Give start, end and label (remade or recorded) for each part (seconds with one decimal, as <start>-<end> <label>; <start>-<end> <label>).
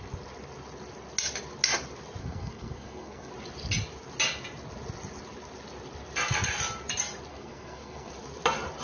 0.0-2.2 recorded; 2.2-3.3 remade; 3.3-7.3 recorded; 7.3-8.1 remade; 8.1-8.8 recorded